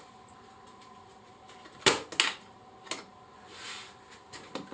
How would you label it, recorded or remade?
recorded